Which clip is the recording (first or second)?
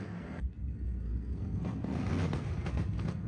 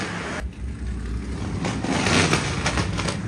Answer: second